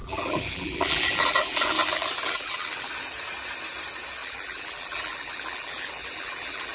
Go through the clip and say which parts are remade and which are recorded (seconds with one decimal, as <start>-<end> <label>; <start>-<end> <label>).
0.0-2.9 remade; 2.9-4.2 recorded; 4.2-6.7 remade